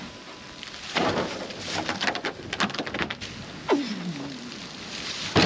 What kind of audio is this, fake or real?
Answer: real